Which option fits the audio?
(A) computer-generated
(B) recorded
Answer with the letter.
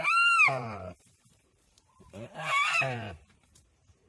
A